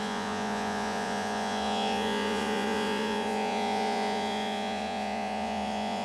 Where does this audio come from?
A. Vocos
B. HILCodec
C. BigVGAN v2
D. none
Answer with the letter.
A